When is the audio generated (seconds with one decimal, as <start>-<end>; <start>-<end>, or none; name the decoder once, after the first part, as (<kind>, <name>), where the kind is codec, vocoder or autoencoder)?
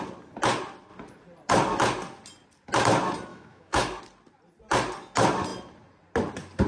3.3-4.0 (autoencoder, DAC-VAE)